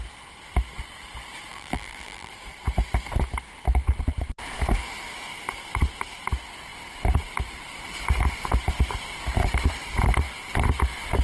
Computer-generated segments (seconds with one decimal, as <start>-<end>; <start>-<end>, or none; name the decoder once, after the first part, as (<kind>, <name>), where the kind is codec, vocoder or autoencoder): 1.5-2.3 (vocoder, BigVGAN v2)